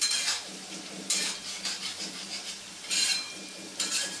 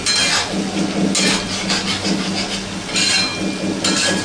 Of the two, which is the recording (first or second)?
second